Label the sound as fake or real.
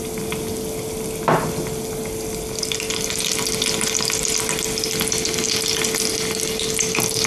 real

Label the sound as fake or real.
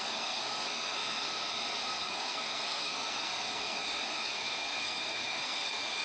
fake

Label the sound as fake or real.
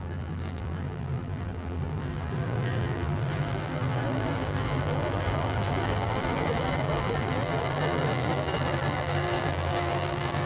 fake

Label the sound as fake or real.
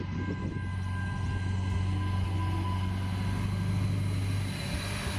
real